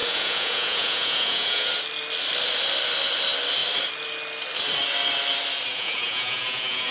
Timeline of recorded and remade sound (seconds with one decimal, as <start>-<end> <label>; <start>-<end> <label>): 0.0-1.7 remade; 1.7-5.7 recorded; 5.7-6.9 remade